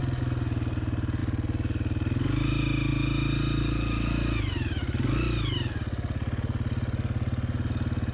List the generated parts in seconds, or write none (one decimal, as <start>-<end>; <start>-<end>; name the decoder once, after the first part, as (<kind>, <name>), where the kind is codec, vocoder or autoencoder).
none